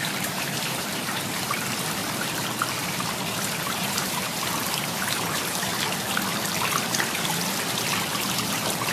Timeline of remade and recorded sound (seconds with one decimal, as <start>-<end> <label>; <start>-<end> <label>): 0.0-2.0 remade; 2.0-3.6 recorded; 3.6-5.7 remade; 5.7-8.1 recorded; 8.1-8.9 remade